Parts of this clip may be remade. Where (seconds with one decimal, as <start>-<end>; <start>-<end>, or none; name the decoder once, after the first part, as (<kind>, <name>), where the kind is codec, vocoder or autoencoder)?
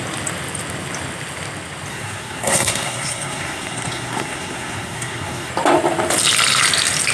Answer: 1.9-5.5 (codec, SNAC)